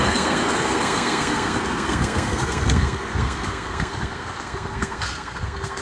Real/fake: fake